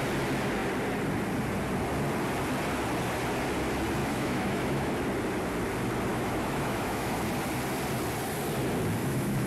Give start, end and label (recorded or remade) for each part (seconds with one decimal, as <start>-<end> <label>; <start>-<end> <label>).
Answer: 0.0-4.0 recorded; 4.0-4.9 remade; 4.9-6.1 recorded; 6.1-7.2 remade; 7.2-9.0 recorded; 9.0-9.5 remade